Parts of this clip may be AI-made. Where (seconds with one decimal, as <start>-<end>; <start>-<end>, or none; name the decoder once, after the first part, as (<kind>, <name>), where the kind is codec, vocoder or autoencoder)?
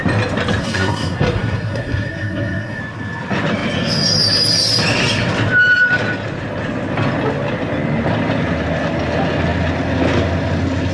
0.6-2.8 (codec, SNAC)